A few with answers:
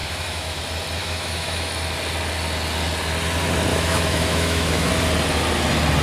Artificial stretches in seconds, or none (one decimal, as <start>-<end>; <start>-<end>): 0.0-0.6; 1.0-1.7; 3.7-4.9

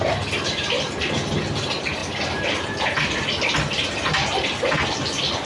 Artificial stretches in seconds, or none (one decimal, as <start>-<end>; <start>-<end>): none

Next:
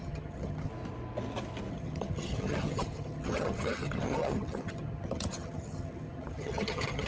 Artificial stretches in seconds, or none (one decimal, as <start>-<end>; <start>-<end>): 0.0-0.7; 1.7-7.1

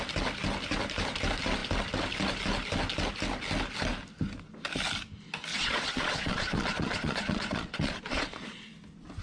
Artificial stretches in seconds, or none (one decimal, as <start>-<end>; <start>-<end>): 5.5-8.6